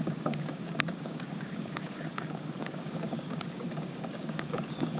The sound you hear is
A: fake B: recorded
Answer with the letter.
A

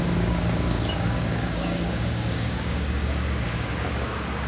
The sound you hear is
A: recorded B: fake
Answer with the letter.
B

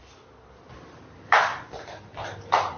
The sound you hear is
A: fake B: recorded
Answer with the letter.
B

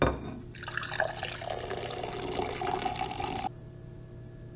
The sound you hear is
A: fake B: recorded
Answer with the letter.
B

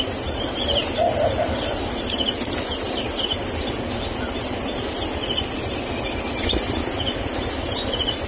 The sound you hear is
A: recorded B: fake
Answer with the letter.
A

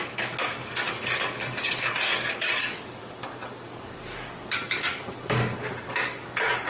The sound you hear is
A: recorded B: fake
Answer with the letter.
B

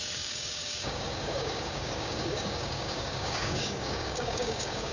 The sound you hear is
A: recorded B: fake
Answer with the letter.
B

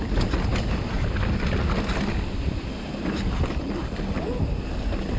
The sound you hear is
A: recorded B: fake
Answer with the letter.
A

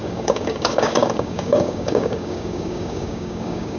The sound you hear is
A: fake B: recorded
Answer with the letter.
A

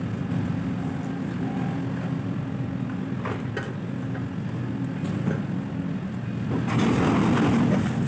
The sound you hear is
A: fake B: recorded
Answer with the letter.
B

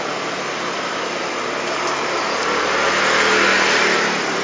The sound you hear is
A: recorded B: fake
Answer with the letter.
A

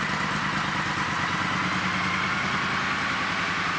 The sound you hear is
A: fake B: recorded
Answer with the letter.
B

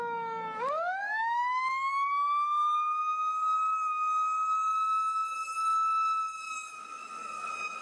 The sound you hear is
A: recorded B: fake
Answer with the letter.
B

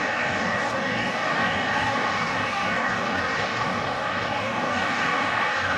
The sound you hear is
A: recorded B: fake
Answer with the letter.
B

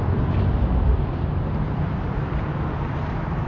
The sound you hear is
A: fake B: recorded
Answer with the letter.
B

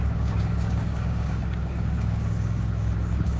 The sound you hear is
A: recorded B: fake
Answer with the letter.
B